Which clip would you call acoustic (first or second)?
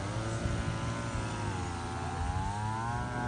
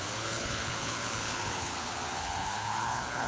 first